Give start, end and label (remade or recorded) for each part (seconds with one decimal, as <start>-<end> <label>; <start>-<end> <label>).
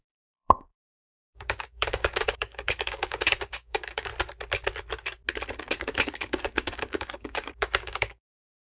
0.0-4.1 remade; 4.1-5.6 recorded; 5.6-8.8 remade